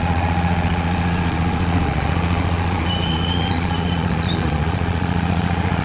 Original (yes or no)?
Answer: no